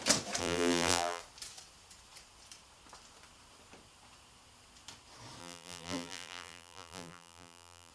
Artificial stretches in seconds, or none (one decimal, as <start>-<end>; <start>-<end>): 0.4-1.2; 5.4-7.9